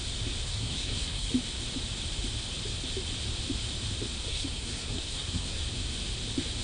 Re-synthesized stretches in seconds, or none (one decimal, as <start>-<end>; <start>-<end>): 0.4-1.3; 4.3-5.6